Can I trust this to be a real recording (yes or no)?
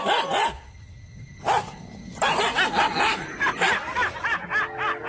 yes